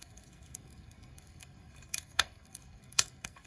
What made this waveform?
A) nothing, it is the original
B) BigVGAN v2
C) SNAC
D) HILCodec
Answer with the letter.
C